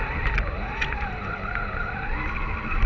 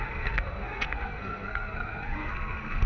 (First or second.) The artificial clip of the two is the second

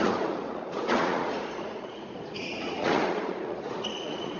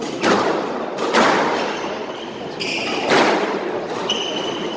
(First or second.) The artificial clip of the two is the first